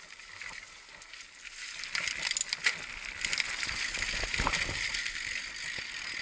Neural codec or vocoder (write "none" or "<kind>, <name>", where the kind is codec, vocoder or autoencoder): none